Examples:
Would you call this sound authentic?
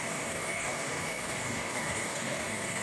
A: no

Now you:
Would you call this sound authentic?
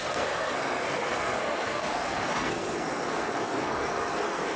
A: no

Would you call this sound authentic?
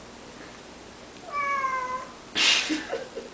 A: yes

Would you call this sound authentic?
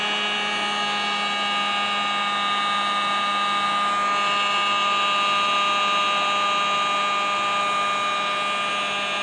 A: yes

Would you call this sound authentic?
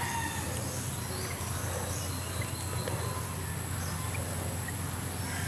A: no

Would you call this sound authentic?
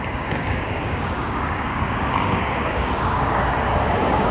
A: no